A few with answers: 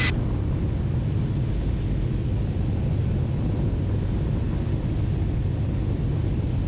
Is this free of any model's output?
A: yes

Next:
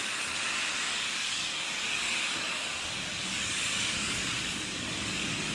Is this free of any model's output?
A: no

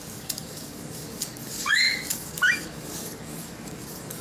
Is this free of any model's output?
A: no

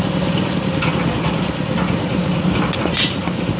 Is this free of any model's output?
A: yes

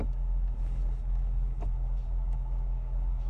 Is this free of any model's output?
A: no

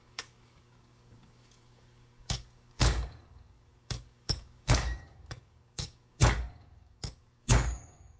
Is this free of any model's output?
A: no